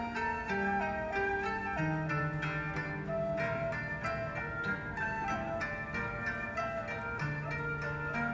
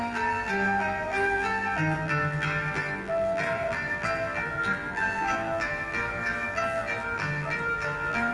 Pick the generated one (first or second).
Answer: second